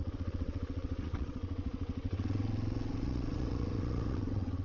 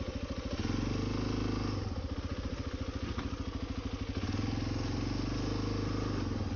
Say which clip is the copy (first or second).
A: first